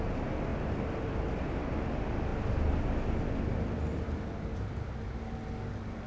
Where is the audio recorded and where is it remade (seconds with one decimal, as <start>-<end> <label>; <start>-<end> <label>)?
0.0-6.1 recorded